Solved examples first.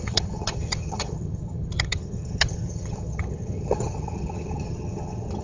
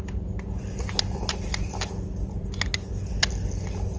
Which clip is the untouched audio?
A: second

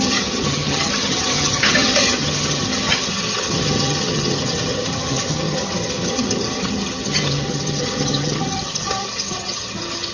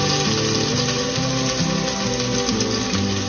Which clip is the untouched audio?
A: second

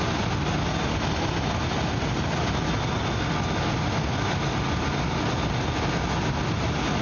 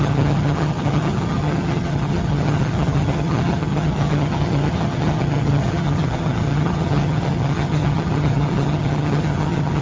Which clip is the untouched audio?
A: first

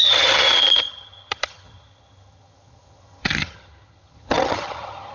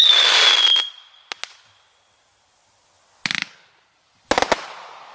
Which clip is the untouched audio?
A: second